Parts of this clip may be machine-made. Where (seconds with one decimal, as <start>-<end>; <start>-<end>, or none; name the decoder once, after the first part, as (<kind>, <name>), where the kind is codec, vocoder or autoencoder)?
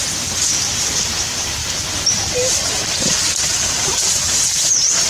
0.0-1.6 (vocoder, BigVGAN v2); 3.4-5.1